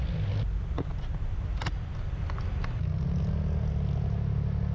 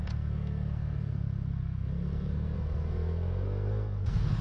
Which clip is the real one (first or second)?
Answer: first